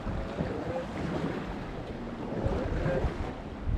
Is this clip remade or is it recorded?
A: recorded